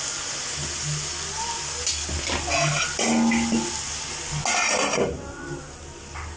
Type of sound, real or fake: real